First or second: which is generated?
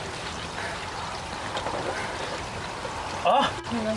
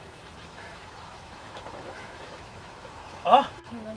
second